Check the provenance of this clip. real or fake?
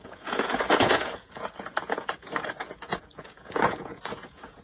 fake